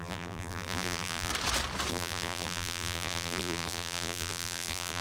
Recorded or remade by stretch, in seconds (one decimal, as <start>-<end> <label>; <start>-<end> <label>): 0.0-1.3 remade; 1.3-1.9 recorded; 1.9-5.0 remade